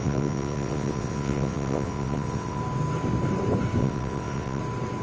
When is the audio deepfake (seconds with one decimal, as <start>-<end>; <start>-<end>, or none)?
0.0-2.6; 3.8-4.6